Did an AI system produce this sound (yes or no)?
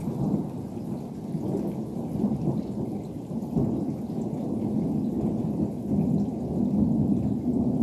no